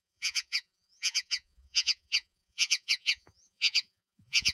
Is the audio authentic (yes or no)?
no